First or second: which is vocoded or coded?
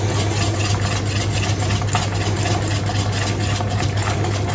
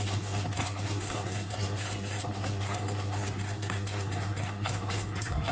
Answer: second